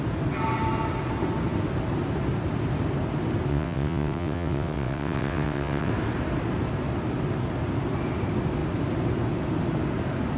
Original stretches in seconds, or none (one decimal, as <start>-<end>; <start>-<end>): 0.0-3.5; 5.9-10.4